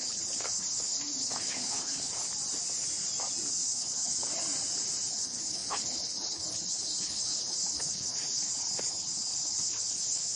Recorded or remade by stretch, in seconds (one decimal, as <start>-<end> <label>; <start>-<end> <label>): 0.0-2.2 remade; 2.2-3.5 recorded; 3.5-4.2 remade; 4.2-5.1 recorded; 5.1-10.4 remade